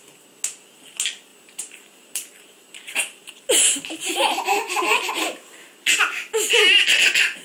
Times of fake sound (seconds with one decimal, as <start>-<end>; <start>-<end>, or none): 1.3-5.1